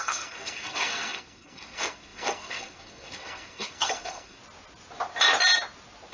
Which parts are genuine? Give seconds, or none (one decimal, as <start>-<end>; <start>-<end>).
4.4-6.1